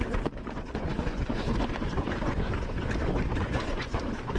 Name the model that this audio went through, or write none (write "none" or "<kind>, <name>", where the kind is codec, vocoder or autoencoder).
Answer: vocoder, Vocos